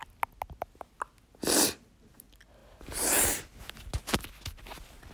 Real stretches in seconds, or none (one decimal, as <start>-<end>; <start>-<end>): 0.0-5.1